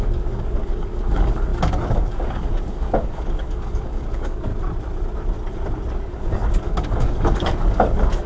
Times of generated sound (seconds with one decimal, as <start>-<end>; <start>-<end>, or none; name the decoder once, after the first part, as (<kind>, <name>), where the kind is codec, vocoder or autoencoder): 0.0-4.5 (codec, DAC); 5.9-8.3